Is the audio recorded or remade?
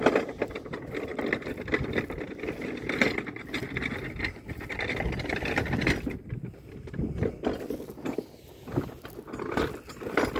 recorded